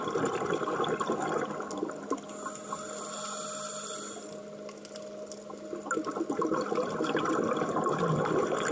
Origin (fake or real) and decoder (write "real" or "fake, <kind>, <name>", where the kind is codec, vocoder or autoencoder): real